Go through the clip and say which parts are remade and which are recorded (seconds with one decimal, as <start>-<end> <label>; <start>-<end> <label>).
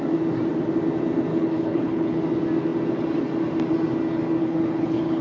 0.0-1.3 recorded; 1.3-2.2 remade; 2.2-4.4 recorded; 4.4-5.2 remade